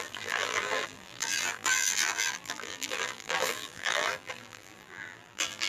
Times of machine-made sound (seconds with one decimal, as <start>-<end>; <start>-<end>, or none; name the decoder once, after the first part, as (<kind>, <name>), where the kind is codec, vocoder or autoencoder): 0.0-5.7 (vocoder, BigVGAN v2)